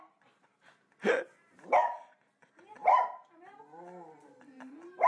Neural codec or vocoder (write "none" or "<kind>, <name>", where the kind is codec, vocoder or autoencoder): vocoder, BigVGAN v2